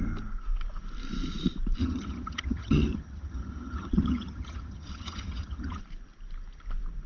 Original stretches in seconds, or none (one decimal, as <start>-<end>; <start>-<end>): 0.0-1.8; 5.8-7.1